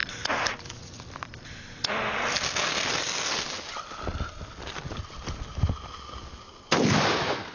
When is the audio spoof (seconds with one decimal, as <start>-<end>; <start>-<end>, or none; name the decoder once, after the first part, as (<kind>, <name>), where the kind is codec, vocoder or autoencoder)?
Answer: none